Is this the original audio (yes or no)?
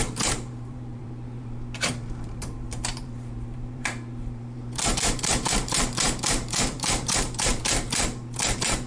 no